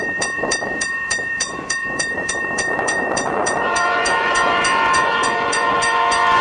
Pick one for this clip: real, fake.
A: fake